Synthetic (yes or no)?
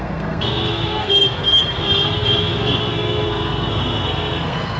yes